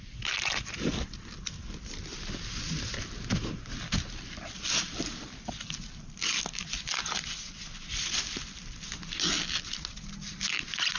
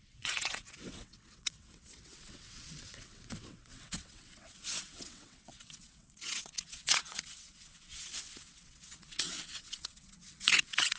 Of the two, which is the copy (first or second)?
second